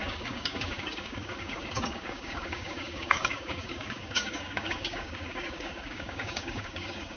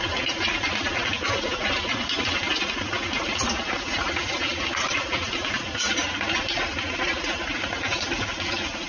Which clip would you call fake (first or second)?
first